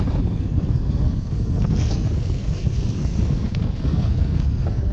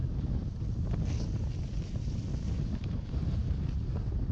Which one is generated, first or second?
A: first